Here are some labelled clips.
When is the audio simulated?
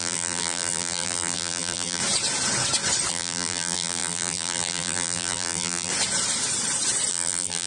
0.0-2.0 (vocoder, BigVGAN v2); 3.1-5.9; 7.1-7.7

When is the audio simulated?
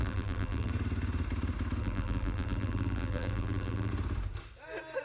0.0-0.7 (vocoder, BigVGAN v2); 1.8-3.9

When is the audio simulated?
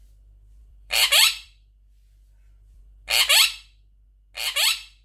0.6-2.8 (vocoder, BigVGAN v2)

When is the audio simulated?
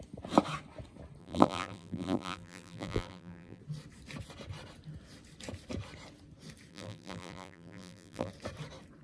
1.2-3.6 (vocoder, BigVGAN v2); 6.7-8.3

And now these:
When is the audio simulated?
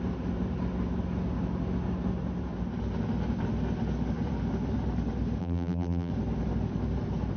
5.4-6.1 (vocoder, BigVGAN v2)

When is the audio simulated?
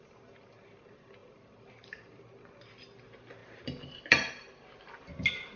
1.2-2.2 (vocoder, BigVGAN v2); 3.4-4.3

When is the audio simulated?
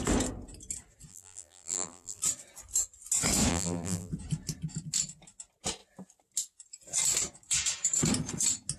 1.1-2.2 (vocoder, BigVGAN v2); 3.5-4.1